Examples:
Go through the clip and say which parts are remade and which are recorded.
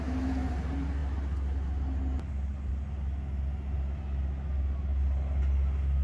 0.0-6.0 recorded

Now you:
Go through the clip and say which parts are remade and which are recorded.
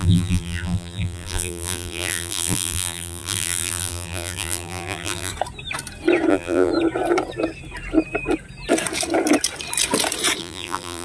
0.0-5.3 remade; 5.3-6.3 recorded; 6.3-6.7 remade; 6.7-10.4 recorded; 10.4-11.0 remade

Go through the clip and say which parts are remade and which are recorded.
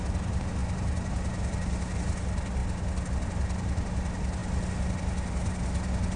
0.0-6.2 recorded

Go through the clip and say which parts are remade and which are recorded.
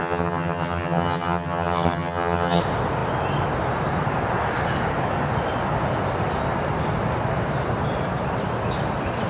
0.0-2.6 remade; 2.6-9.3 recorded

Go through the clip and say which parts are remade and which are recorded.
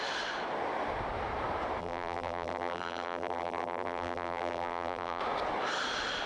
0.0-1.8 recorded; 1.8-5.2 remade; 5.2-6.3 recorded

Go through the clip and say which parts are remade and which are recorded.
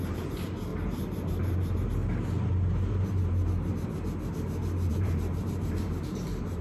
0.0-0.7 remade; 0.7-1.3 recorded; 1.3-2.0 remade; 2.0-4.9 recorded; 4.9-6.6 remade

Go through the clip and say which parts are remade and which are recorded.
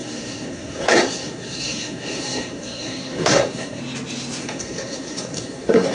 0.0-3.8 remade; 3.8-4.4 recorded; 4.4-5.9 remade